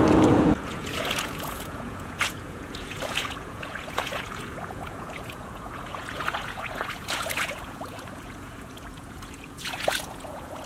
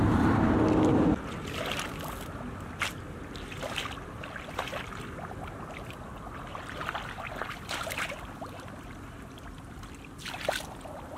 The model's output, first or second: first